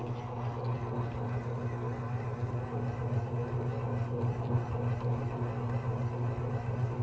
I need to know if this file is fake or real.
real